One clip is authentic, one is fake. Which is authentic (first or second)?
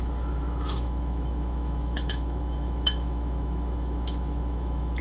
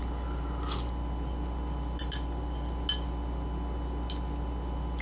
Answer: second